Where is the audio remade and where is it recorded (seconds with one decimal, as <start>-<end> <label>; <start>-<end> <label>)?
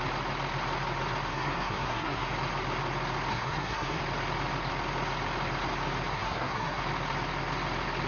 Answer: 0.0-1.3 recorded; 1.3-2.3 remade; 2.3-3.3 recorded; 3.3-4.0 remade; 4.0-6.1 recorded; 6.1-6.8 remade; 6.8-8.1 recorded